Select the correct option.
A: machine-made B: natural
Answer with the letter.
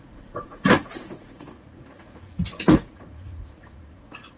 A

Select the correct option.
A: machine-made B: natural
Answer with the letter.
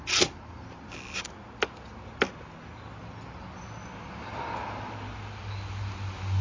B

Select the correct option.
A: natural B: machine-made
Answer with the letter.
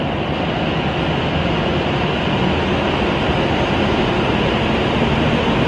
A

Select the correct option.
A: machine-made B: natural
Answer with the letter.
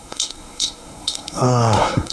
A